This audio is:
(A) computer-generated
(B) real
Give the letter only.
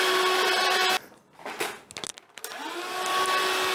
B